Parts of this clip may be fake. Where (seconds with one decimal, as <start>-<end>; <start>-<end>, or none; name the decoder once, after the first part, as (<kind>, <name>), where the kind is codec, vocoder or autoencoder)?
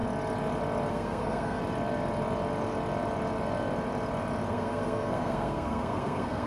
0.9-1.6 (codec, SNAC); 4.5-6.5